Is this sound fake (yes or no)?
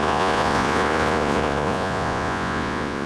yes